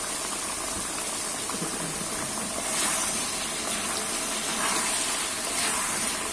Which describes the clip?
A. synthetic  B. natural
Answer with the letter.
B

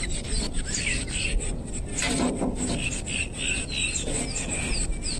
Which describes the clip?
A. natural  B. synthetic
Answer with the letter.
A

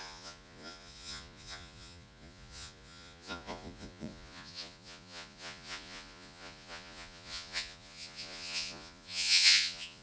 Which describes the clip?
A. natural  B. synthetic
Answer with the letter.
B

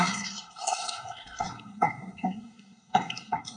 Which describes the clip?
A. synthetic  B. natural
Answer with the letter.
A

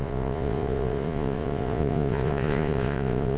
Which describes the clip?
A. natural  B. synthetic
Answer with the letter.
B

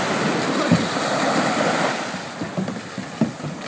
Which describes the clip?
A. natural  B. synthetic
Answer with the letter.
A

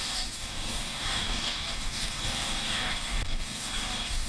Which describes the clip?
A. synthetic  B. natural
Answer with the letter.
A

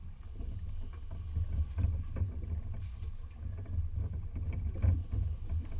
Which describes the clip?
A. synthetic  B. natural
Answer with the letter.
B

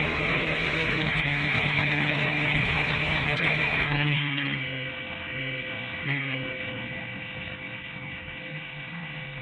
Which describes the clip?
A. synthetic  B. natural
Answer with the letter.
A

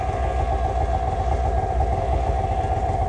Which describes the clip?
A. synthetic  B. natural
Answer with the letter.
B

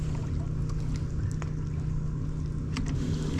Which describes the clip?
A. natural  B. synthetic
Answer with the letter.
A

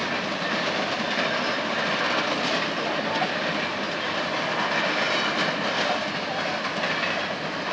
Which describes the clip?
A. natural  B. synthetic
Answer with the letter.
A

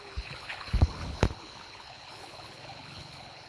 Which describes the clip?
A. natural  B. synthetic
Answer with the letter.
B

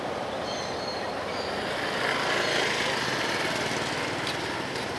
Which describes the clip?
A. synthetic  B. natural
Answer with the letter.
B